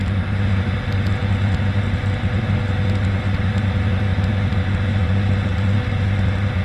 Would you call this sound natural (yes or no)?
yes